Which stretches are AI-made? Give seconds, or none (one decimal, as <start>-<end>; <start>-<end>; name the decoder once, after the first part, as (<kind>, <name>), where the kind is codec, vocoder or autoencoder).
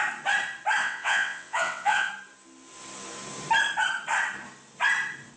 0.8-2.1 (vocoder, WaveNeXt)